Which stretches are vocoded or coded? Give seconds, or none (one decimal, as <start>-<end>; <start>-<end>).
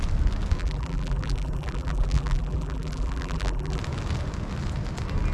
0.6-3.8